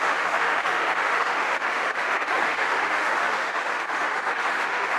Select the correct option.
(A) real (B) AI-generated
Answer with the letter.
B